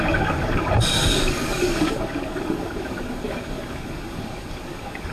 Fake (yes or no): yes